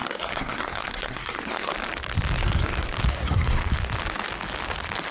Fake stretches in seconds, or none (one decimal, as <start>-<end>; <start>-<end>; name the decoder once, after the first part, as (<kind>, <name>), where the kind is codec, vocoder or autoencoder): 0.0-1.7 (codec, SNAC); 3.1-3.6